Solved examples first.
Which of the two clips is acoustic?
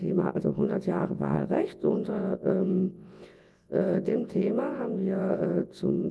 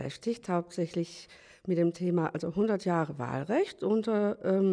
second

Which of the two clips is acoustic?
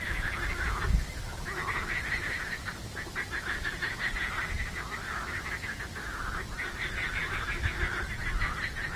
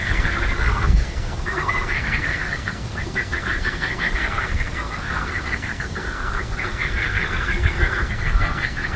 first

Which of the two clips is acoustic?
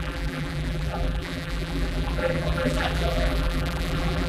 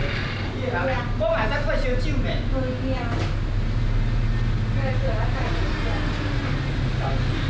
second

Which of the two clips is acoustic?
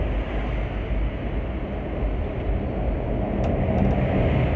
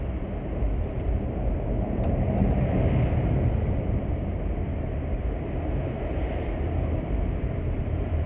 first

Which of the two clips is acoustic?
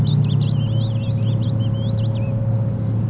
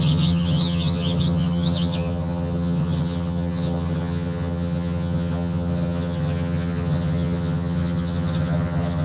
first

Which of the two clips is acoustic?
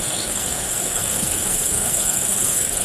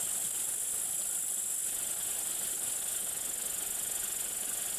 second